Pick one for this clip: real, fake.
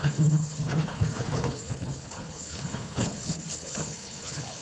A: fake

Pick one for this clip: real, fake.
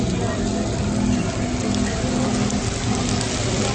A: real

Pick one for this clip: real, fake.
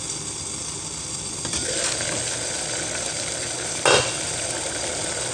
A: real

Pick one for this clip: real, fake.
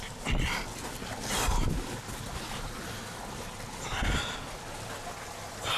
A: real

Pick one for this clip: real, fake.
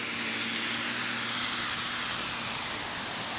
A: real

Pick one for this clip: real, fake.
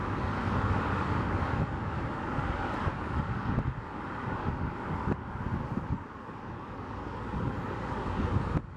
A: fake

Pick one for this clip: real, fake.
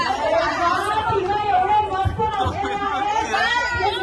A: real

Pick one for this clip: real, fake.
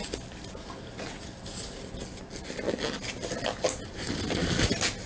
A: real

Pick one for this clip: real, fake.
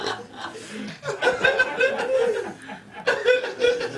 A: real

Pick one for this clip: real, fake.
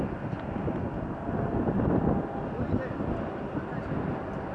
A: real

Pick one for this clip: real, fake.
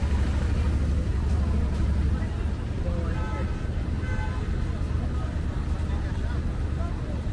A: real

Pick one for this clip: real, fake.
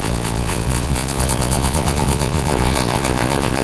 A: fake